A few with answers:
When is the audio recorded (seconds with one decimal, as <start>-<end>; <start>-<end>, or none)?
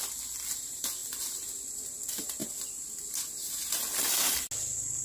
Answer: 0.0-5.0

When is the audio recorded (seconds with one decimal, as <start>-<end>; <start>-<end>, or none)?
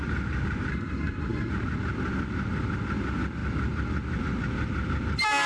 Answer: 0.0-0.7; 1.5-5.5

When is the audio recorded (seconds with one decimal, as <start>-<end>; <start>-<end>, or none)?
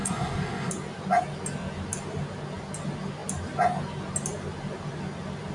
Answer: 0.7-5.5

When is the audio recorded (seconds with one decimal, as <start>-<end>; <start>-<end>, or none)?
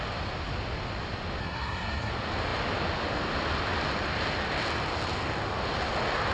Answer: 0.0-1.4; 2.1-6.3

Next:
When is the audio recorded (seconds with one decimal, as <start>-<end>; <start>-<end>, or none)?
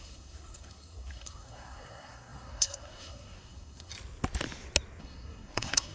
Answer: 3.9-5.0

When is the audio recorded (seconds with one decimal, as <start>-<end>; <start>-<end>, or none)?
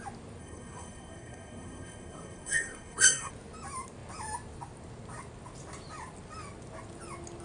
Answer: 0.0-0.4; 3.3-7.4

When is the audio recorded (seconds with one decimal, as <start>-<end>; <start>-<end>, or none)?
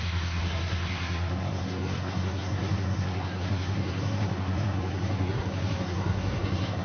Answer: none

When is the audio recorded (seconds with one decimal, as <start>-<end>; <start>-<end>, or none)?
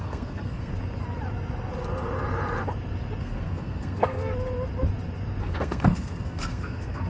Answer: 0.7-3.2; 4.2-5.4